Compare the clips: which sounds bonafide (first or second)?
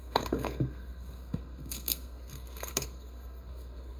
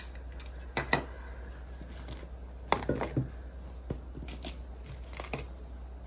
second